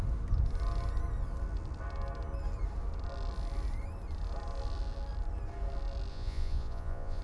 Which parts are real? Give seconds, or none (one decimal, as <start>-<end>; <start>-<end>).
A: 0.0-6.1